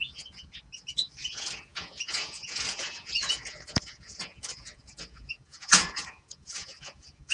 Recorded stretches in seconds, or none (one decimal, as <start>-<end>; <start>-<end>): none